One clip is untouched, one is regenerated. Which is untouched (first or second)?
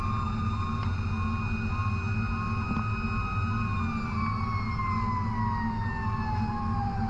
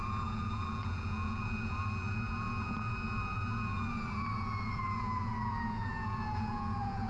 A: first